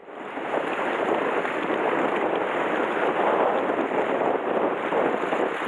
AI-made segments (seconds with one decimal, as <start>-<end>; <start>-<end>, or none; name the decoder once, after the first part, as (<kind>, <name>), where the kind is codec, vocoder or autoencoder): 0.0-3.4 (vocoder, BigVGAN v2)

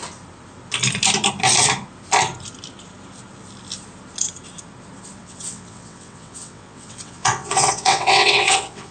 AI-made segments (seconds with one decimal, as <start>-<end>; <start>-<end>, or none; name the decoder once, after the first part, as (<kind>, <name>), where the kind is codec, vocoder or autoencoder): 5.2-8.9 (vocoder, WaveNeXt)